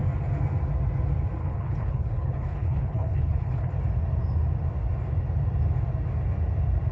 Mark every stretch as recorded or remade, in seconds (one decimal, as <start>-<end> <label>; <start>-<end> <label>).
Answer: 0.0-1.4 recorded; 1.4-3.7 remade; 3.7-6.9 recorded